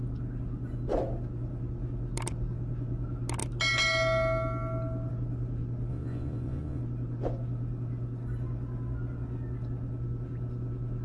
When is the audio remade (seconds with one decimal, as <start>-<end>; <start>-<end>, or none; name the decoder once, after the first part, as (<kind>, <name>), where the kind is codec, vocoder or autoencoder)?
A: 5.9-6.8 (vocoder, Vocos)